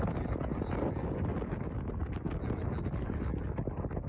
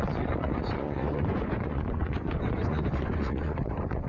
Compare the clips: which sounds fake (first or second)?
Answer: second